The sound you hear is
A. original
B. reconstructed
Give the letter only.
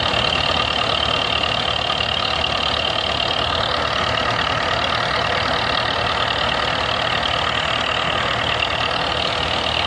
A